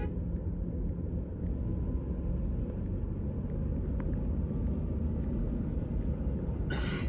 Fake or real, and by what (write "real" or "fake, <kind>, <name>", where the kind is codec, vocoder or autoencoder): real